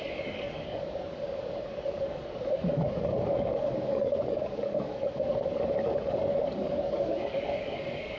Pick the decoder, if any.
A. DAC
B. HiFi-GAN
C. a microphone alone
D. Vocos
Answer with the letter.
A